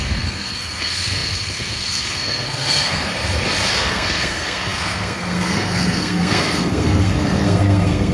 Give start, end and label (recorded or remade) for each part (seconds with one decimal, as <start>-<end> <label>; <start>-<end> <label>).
0.0-3.1 remade; 3.1-3.7 recorded; 3.7-8.1 remade